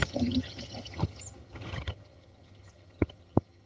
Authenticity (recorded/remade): remade